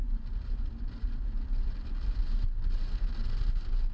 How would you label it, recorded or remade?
recorded